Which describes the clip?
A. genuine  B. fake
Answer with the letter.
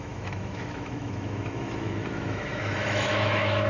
B